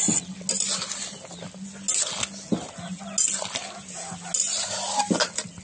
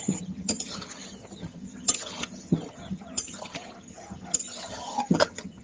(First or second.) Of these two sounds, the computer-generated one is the second